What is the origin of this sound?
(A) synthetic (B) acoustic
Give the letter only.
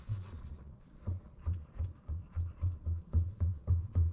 A